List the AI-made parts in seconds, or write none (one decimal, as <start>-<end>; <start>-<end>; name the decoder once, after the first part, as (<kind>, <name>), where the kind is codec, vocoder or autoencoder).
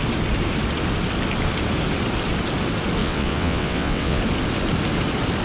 3.0-4.2 (vocoder, WaveNeXt)